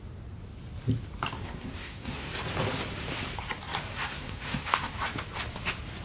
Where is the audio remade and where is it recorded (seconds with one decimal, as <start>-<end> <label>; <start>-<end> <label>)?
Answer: 0.0-1.4 recorded; 1.4-2.3 remade; 2.3-3.9 recorded; 3.9-4.9 remade; 4.9-6.0 recorded